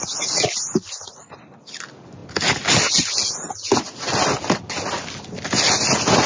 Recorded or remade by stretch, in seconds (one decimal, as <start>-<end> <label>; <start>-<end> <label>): 0.0-6.3 recorded